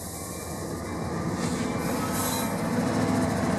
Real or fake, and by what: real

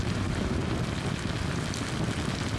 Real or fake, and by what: real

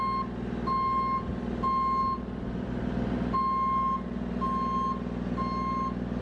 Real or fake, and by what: real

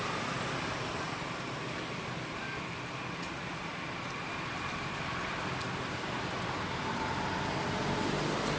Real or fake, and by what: real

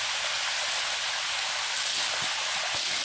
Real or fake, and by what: real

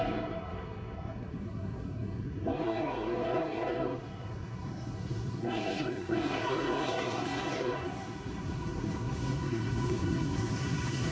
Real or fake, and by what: fake, codec, SNAC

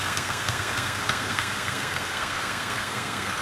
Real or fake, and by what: fake, codec, SNAC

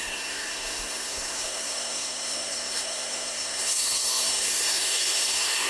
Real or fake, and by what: fake, codec, SNAC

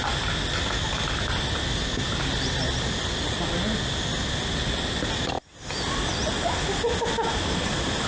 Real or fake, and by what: real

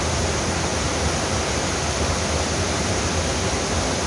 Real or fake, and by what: real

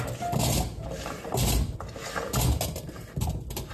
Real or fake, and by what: real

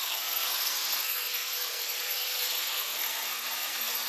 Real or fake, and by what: fake, codec, SNAC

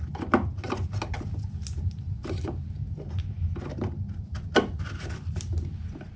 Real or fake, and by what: real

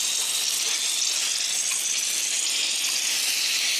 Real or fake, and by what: real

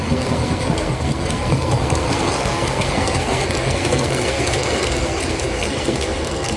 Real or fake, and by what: fake, codec, SNAC